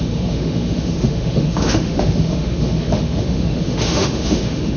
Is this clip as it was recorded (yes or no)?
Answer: no